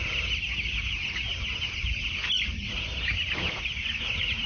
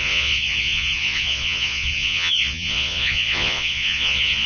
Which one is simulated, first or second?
second